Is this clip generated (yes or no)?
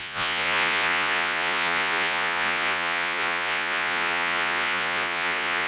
yes